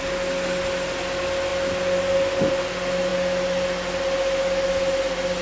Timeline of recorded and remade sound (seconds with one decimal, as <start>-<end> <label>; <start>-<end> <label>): 0.0-5.4 recorded

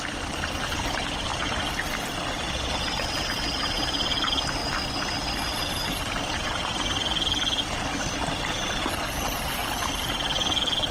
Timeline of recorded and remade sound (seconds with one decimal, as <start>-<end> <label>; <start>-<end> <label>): 0.0-10.9 recorded

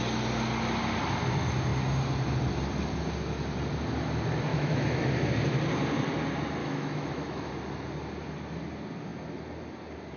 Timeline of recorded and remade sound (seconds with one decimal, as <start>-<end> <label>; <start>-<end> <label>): 0.0-4.5 recorded; 4.5-5.4 remade; 5.4-6.6 recorded; 6.6-7.5 remade; 7.5-10.2 recorded

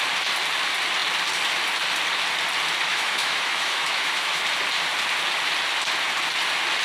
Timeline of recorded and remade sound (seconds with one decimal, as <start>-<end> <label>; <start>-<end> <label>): 0.0-2.9 recorded; 2.9-4.4 remade; 4.4-6.8 recorded

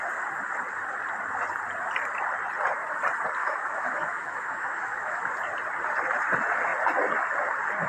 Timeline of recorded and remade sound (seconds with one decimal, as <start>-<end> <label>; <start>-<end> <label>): 0.0-3.4 recorded; 3.4-5.2 remade; 5.2-7.9 recorded

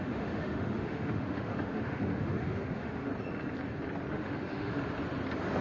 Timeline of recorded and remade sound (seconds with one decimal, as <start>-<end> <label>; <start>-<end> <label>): 0.0-3.1 remade; 3.1-4.1 recorded; 4.1-4.7 remade; 4.7-5.6 recorded

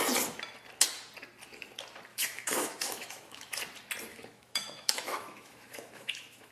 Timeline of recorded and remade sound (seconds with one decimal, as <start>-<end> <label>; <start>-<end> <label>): 0.0-2.1 recorded; 2.1-3.6 remade; 3.6-4.1 recorded; 4.1-6.5 remade

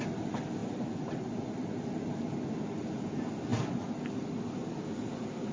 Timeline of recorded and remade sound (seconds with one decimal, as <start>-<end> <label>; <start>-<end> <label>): 0.0-5.5 recorded